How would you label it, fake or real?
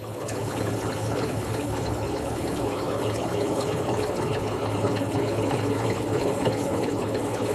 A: fake